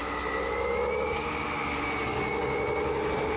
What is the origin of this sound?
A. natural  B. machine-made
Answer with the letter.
A